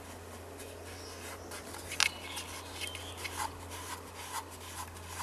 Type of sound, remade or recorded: recorded